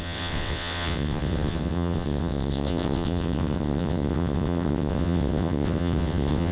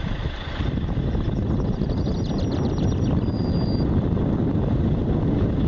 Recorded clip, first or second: second